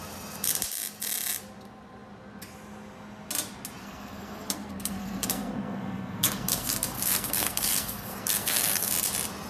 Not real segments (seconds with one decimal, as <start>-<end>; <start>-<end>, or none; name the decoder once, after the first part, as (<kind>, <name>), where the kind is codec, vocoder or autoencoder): 3.8-8.9 (codec, SNAC)